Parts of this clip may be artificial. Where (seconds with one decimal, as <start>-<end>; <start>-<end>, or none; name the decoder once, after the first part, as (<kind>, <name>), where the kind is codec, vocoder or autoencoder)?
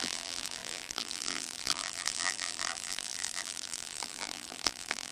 0.0-5.1 (vocoder, BigVGAN v2)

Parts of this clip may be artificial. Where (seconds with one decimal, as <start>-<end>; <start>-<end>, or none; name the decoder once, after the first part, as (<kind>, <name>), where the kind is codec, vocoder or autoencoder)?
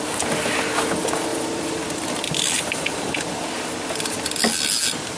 1.3-4.4 (vocoder, BigVGAN v2)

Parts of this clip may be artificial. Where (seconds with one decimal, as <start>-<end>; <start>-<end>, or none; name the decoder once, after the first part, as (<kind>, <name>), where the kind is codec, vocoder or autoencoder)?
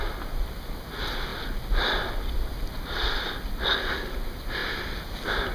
none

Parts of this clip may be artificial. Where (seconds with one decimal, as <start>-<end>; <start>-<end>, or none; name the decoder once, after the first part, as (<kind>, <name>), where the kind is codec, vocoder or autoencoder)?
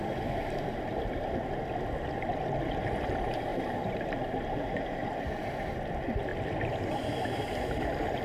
3.5-4.5 (vocoder, BigVGAN v2)